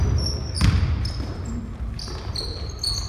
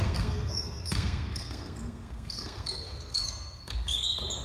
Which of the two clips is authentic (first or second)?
first